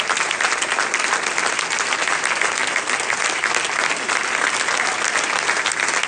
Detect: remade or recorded recorded